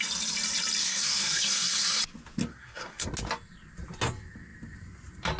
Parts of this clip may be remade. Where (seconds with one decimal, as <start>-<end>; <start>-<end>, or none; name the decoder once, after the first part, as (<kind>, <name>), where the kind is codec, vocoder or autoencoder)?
0.8-2.0 (codec, SNAC); 2.5-3.1